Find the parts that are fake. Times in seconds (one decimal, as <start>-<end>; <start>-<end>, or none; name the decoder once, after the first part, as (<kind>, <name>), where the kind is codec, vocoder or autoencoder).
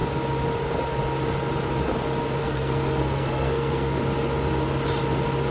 2.4-4.0 (codec, SNAC)